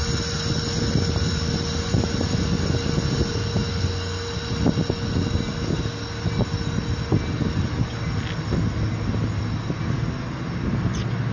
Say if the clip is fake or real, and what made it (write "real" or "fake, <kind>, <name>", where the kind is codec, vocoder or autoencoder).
real